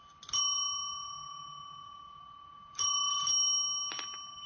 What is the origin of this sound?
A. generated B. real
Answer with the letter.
B